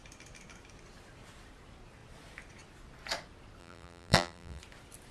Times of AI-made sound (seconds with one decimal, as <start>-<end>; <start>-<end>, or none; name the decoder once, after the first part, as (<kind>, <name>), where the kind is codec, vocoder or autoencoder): 3.6-4.6 (vocoder, BigVGAN v2)

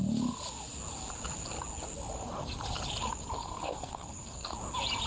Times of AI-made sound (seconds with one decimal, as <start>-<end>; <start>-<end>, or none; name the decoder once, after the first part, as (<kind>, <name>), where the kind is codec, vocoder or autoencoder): 3.4-4.5 (codec, SNAC)

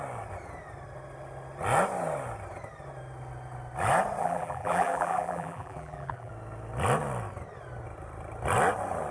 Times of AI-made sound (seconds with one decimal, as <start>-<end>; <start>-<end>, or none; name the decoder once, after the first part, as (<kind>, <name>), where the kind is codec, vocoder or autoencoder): 4.2-6.3 (vocoder, BigVGAN v2)

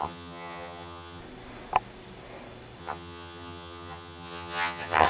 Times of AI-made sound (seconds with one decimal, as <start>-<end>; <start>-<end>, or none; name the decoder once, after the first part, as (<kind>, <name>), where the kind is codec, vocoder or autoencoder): 0.0-1.2 (vocoder, HiFi-GAN); 2.8-5.1

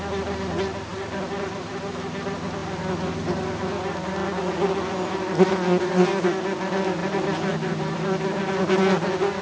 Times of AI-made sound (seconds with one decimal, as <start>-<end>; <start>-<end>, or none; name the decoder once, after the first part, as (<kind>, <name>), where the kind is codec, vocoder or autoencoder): 0.9-1.7 (vocoder, BigVGAN v2); 7.0-8.5